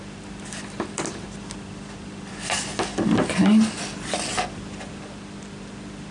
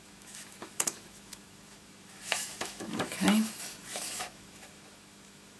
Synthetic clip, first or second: second